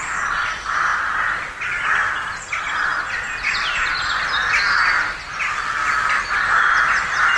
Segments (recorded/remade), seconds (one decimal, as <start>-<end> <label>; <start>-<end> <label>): 0.0-7.4 recorded

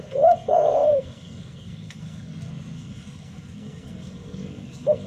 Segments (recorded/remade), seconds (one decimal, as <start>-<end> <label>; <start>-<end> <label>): 0.0-5.1 remade